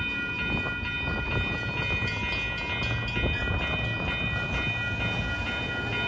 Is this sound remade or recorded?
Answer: recorded